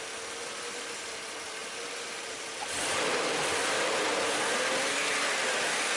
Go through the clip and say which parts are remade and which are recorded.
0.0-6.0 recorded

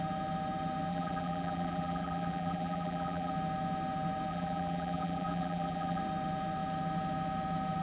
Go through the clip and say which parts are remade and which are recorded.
0.0-0.9 recorded; 0.9-3.3 remade; 3.3-4.3 recorded; 4.3-6.0 remade; 6.0-7.8 recorded

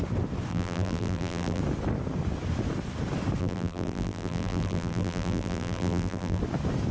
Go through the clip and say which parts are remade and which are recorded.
0.0-0.5 recorded; 0.5-1.6 remade; 1.6-3.4 recorded; 3.4-6.4 remade; 6.4-6.9 recorded